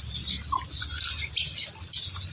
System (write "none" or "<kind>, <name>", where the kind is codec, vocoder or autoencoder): none